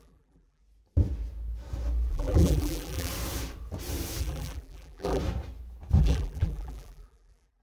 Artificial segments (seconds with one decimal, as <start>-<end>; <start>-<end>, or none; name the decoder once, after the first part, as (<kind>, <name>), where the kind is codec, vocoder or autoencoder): 0.0-0.6 (vocoder, BigVGAN v2); 2.1-3.1; 4.2-5.2; 6.0-7.6